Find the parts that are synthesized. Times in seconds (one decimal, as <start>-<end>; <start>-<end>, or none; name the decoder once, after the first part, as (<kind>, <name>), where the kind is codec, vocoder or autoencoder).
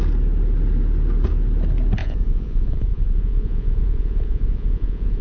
2.0-5.2 (vocoder, Vocos)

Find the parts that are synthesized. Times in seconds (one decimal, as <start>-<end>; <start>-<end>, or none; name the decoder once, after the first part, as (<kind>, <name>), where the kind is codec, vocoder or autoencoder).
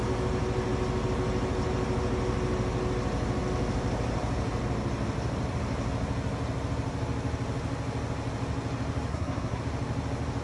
9.1-9.6 (codec, SNAC)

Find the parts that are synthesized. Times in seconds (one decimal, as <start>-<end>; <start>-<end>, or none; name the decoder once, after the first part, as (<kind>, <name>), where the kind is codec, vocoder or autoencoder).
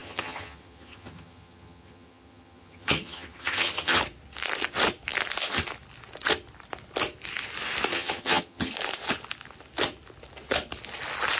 0.0-4.0 (vocoder, HiFi-GAN); 7.9-8.7